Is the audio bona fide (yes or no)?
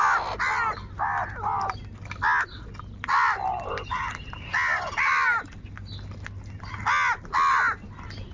yes